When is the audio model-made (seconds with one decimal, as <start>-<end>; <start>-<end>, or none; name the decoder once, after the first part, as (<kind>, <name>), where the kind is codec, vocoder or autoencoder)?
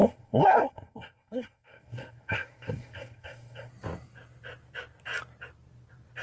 0.0-3.7 (codec, SNAC)